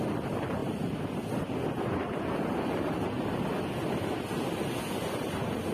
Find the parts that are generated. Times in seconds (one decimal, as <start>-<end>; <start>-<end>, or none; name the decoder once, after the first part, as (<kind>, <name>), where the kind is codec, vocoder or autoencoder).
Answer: none